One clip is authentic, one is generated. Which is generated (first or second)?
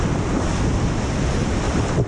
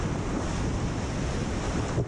first